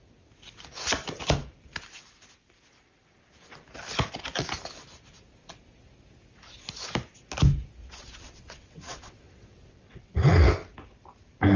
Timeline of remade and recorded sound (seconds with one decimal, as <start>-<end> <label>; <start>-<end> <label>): 0.0-7.8 recorded; 7.8-10.3 remade; 10.3-11.6 recorded